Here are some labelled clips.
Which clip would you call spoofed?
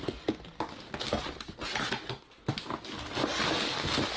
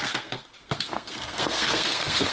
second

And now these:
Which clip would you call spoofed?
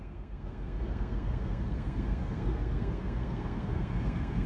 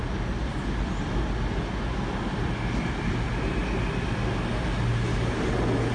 first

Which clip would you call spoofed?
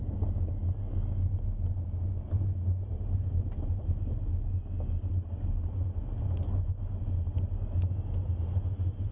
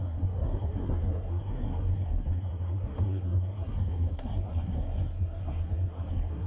second